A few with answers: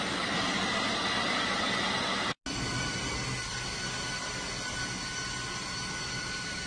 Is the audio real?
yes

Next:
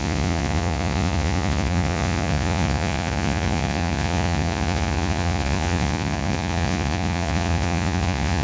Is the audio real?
no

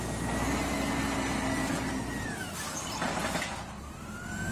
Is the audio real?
yes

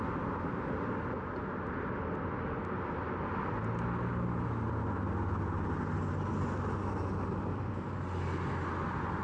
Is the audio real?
yes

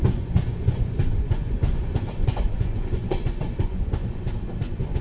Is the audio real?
no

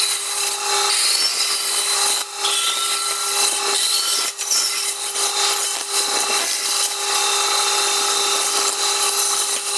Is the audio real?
yes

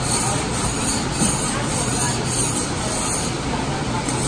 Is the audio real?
yes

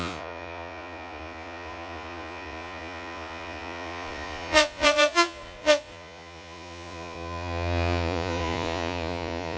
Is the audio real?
no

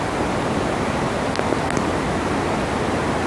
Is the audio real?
yes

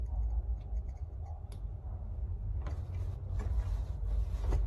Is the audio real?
yes